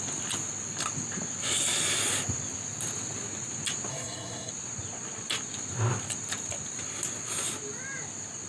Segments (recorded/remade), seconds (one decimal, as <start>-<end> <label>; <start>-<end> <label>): 0.0-3.9 recorded; 3.9-4.5 remade; 4.5-8.5 recorded